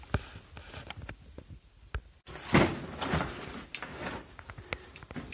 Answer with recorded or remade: recorded